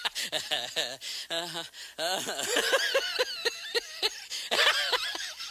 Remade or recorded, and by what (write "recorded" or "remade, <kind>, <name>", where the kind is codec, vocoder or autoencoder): recorded